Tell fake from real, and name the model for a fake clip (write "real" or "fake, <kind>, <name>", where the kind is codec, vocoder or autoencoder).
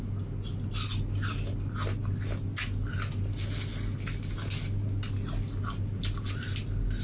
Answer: real